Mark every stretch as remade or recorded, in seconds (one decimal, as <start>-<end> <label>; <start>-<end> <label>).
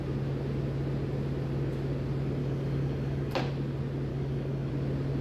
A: 0.0-2.4 recorded; 2.4-3.4 remade; 3.4-4.1 recorded; 4.1-4.7 remade; 4.7-5.2 recorded